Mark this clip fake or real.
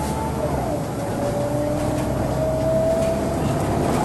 real